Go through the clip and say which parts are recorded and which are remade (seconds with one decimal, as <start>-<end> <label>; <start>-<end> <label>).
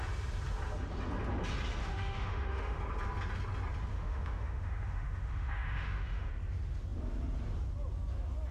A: 0.0-1.8 recorded; 1.8-2.8 remade; 2.8-3.9 recorded; 3.9-6.3 remade; 6.3-8.5 recorded